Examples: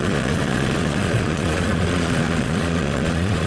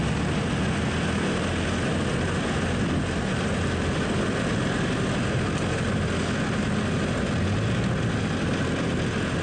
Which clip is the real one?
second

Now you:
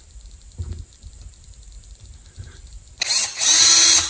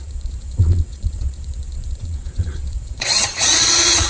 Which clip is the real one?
first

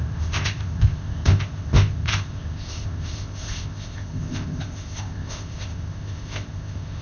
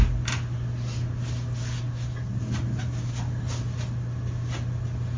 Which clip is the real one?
second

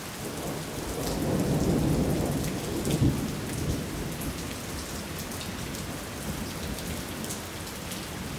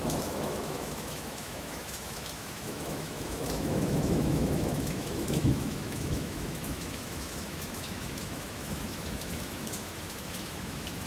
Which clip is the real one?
first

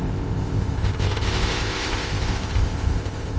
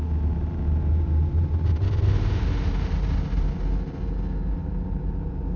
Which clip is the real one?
second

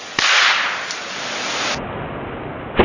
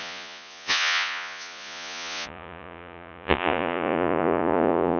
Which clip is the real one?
first